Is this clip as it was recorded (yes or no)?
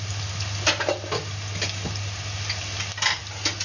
yes